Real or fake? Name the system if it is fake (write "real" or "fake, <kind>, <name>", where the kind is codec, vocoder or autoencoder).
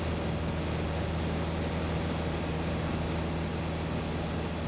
real